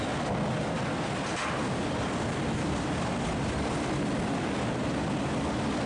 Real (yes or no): yes